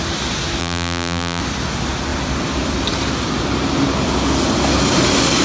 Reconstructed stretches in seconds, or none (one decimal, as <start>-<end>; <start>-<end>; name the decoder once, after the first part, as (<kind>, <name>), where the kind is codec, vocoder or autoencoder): 0.6-1.4 (vocoder, BigVGAN v2)